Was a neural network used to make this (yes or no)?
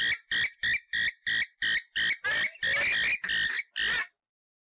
no